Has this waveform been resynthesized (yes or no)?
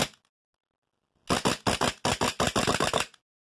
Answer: no